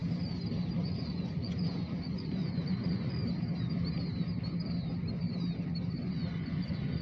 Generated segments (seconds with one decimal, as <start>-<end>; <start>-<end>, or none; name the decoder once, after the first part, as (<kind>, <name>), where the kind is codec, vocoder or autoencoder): 0.8-3.2 (vocoder, Vocos); 6.1-7.0